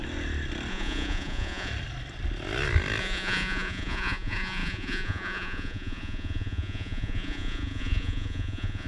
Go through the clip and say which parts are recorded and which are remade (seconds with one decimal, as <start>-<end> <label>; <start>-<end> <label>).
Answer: 0.0-0.7 recorded; 0.7-1.7 remade; 1.7-3.0 recorded; 3.0-8.9 remade